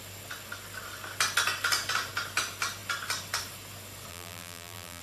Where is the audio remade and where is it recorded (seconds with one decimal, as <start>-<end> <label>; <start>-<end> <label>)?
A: 0.0-4.1 recorded; 4.1-5.0 remade

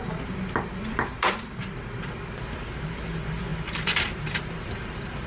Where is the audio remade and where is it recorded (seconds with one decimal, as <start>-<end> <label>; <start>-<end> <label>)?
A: 0.0-3.5 recorded; 3.5-5.3 remade

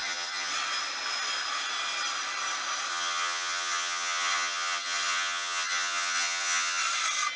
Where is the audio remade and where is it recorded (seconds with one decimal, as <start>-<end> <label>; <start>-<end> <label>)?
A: 0.0-0.5 remade; 0.5-2.9 recorded; 2.9-6.8 remade; 6.8-7.4 recorded

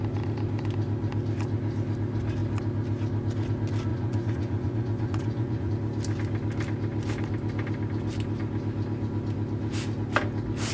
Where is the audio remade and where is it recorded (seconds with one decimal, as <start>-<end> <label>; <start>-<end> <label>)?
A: 0.0-3.9 recorded; 3.9-5.7 remade; 5.7-10.7 recorded

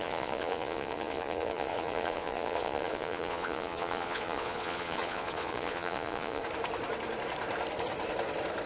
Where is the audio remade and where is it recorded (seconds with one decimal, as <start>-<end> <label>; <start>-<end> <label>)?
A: 0.0-6.4 remade; 6.4-8.7 recorded

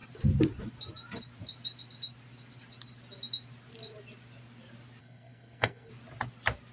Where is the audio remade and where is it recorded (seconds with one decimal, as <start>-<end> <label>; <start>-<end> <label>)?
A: 0.0-5.0 recorded; 5.0-5.9 remade; 5.9-6.7 recorded